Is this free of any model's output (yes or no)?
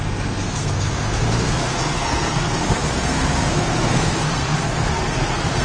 no